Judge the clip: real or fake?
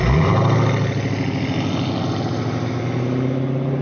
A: real